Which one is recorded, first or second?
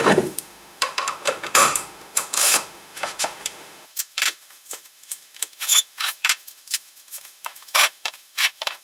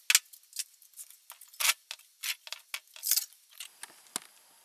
second